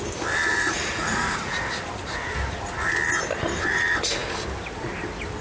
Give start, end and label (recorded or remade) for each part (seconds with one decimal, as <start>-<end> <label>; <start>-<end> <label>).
0.0-0.5 recorded; 0.5-1.6 remade; 1.6-5.4 recorded